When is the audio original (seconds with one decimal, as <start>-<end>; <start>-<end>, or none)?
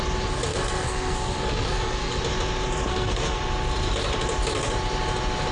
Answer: 0.0-0.5; 2.2-2.9; 3.4-5.5